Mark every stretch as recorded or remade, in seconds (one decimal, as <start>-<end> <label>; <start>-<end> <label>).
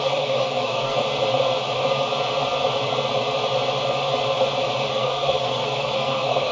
0.0-1.0 remade; 1.0-4.9 recorded; 4.9-6.5 remade